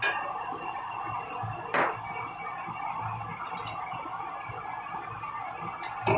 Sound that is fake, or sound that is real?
real